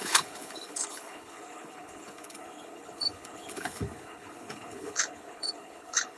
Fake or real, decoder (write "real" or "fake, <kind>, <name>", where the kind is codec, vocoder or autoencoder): fake, codec, HILCodec